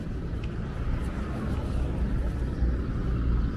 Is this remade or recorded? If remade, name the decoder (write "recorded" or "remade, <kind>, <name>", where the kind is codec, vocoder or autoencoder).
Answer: recorded